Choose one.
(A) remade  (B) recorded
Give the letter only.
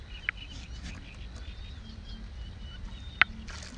B